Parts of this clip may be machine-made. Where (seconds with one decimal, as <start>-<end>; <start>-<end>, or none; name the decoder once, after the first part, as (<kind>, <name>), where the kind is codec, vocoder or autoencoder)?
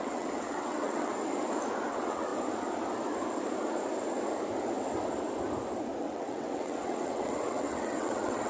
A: 0.0-1.1 (vocoder, WaveNeXt); 1.9-2.3; 6.0-8.5